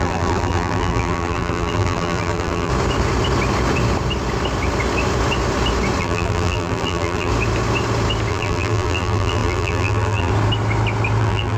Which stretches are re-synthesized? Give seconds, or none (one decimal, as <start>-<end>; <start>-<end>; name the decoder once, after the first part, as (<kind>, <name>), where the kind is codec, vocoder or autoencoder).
0.0-2.7 (vocoder, BigVGAN v2); 6.0-7.3; 8.3-10.3; 11.2-11.6